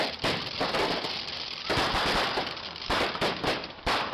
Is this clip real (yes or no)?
yes